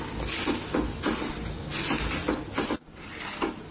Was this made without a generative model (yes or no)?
yes